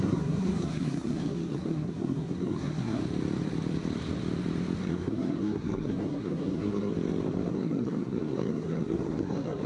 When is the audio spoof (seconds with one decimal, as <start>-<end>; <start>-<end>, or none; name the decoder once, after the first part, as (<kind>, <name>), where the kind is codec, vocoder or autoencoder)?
0.0-3.0 (codec, SNAC); 4.8-6.9; 7.5-9.7